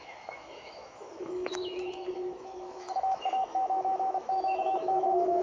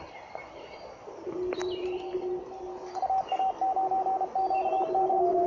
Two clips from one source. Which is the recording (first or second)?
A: second